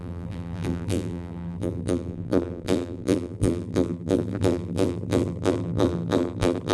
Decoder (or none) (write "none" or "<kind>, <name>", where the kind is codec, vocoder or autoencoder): vocoder, BigVGAN v2